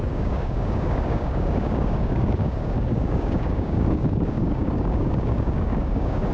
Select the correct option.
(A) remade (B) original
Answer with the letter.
A